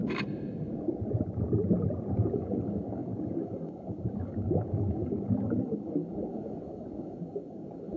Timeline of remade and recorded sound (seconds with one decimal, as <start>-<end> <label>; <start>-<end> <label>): 0.0-2.3 recorded; 2.3-8.0 remade